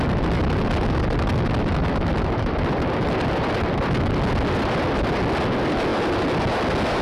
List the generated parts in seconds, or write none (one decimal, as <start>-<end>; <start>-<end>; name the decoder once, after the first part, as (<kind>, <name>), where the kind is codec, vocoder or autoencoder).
none